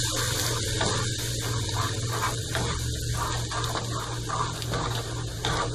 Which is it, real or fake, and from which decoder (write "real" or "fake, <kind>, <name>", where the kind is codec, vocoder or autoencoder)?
real